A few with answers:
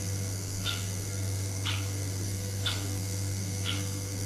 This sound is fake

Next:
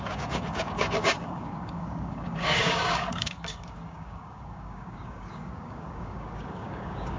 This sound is fake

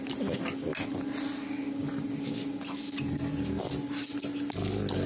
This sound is real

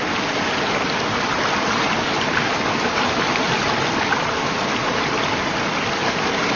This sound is real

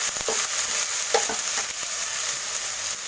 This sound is real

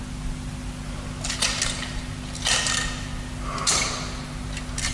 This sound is real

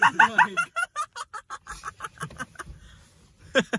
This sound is real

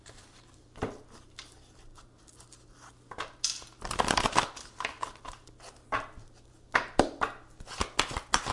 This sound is real